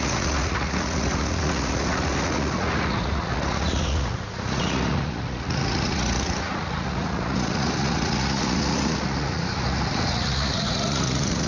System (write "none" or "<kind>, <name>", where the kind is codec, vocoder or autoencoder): vocoder, Vocos